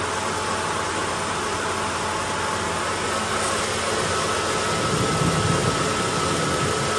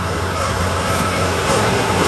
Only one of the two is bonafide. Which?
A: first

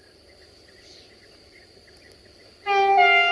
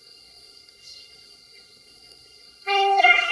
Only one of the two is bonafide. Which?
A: first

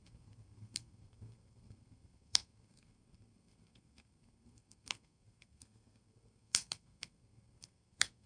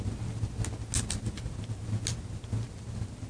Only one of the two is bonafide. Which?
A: second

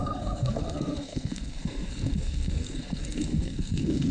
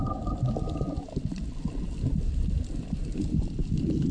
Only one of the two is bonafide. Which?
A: second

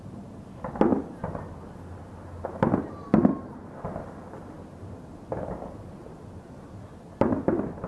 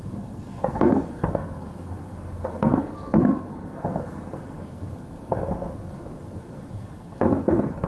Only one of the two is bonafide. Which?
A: first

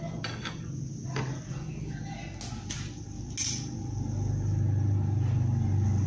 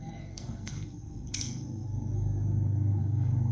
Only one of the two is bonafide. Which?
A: first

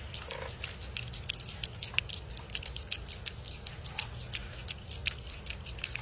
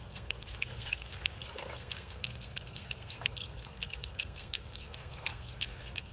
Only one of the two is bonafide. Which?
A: first